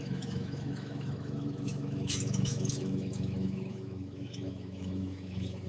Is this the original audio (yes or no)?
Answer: no